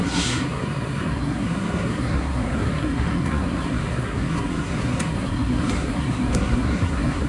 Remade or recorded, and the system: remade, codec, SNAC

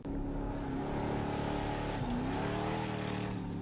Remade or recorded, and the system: recorded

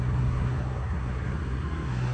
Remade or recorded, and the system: remade, codec, SNAC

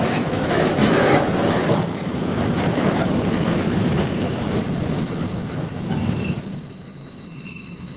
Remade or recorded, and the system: remade, autoencoder, DAC-VAE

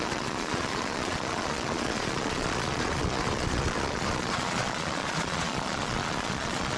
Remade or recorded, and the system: remade, vocoder, Vocos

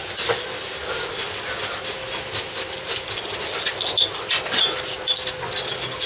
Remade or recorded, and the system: recorded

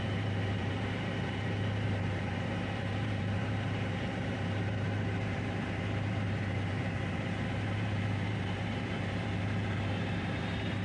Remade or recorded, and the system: remade, vocoder, BigVGAN v2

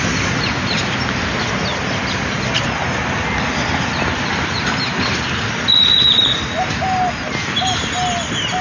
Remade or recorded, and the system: recorded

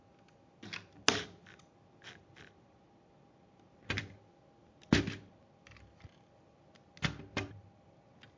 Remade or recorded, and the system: recorded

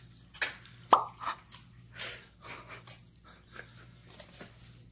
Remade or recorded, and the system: recorded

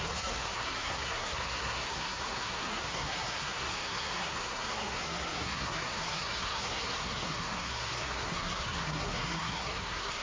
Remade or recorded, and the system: remade, codec, SNAC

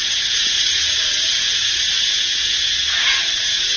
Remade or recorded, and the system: remade, vocoder, Vocos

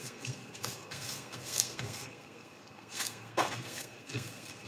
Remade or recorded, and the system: remade, codec, SNAC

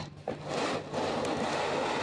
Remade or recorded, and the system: recorded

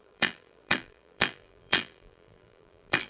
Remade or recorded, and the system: remade, vocoder, BigVGAN v2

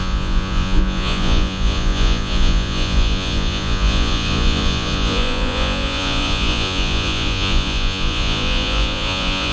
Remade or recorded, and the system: remade, vocoder, Vocos